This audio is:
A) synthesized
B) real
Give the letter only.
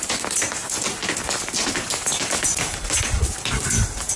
B